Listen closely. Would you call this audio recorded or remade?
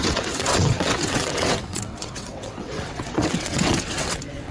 remade